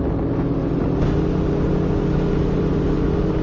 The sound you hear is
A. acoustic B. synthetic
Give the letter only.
A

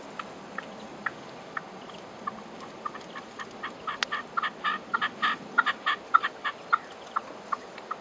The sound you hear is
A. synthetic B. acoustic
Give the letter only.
B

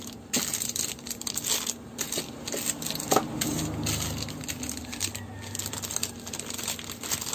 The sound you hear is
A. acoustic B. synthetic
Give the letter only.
A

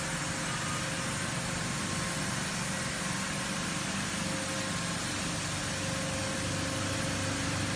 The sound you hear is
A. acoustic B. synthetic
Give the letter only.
A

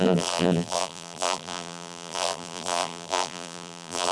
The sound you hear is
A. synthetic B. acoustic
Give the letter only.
A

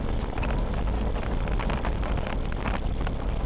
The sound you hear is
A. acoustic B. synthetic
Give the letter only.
A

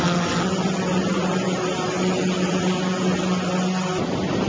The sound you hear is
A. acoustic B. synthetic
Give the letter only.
A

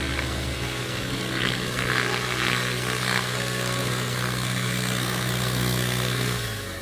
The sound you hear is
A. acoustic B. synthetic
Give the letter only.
B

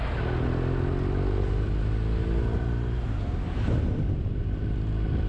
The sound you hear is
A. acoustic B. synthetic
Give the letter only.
A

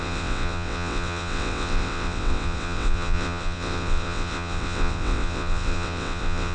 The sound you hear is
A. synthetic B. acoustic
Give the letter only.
A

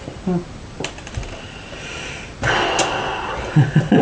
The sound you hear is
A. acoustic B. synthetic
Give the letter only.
A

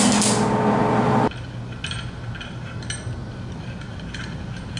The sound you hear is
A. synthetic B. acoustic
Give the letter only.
B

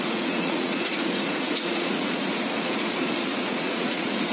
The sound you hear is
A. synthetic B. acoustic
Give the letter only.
A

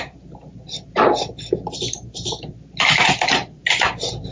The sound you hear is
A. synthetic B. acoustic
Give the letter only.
A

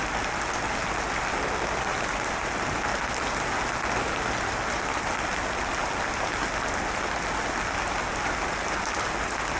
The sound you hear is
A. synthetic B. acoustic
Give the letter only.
B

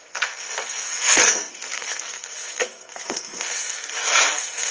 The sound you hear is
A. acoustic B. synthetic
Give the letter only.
B